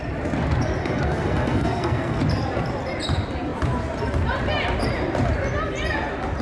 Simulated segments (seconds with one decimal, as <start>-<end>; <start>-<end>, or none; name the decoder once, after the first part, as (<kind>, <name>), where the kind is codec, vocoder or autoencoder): 0.8-2.2 (codec, SNAC)